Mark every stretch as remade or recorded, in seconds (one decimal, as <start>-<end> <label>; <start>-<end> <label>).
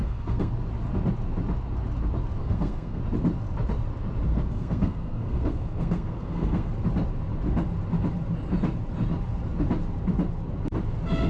0.0-0.5 remade; 0.5-2.4 recorded; 2.4-3.0 remade; 3.0-4.3 recorded; 4.3-6.7 remade; 6.7-11.3 recorded